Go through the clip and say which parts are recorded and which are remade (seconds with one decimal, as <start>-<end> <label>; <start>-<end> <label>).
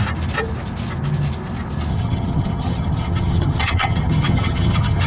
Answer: 0.0-1.9 recorded; 1.9-5.1 remade